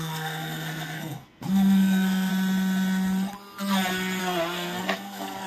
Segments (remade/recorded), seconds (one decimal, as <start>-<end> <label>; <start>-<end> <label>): 0.0-2.3 remade; 2.3-4.2 recorded; 4.2-5.5 remade